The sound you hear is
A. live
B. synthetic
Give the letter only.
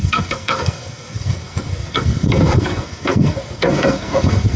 B